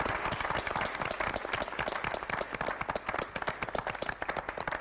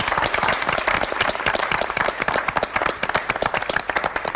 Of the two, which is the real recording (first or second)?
first